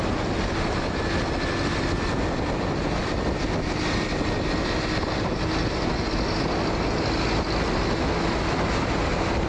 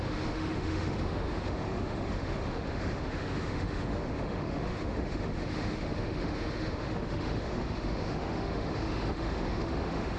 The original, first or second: first